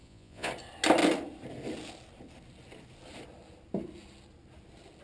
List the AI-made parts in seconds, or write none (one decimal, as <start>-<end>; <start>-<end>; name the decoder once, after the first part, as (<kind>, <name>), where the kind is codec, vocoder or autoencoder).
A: 0.0-0.5 (vocoder, Vocos)